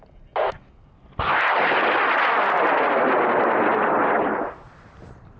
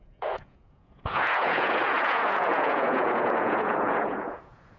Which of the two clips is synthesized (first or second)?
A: second